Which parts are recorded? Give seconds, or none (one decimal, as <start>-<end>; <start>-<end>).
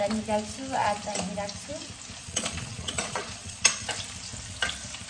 0.0-2.2; 3.6-5.1